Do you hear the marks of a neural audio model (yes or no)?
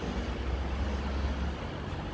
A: no